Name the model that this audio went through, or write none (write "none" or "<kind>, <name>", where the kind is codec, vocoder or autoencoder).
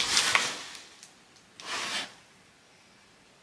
none